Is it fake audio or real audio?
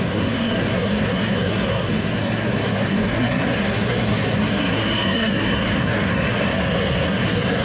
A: fake